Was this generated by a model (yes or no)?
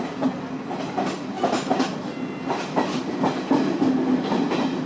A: no